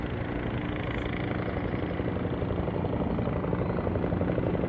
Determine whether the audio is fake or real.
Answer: real